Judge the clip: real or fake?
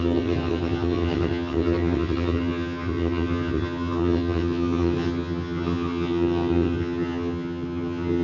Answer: fake